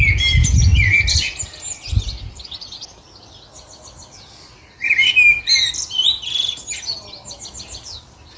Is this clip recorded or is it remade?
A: recorded